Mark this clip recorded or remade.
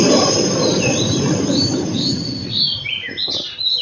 recorded